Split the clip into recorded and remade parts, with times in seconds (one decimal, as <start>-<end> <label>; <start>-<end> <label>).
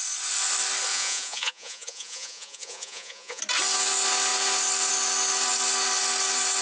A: 0.0-0.9 recorded; 0.9-3.4 remade; 3.4-6.6 recorded